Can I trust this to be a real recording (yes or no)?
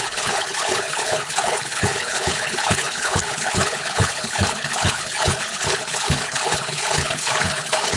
no